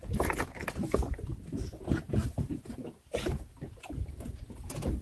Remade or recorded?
remade